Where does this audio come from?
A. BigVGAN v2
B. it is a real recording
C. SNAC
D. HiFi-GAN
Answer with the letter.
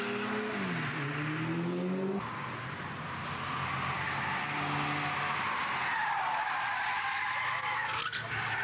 B